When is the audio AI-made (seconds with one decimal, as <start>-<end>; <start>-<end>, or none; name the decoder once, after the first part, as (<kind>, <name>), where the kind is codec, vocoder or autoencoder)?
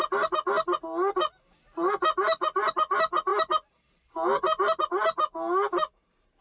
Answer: none